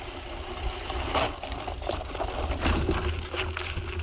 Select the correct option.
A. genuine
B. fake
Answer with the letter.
A